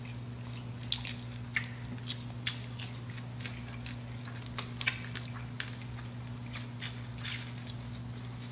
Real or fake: real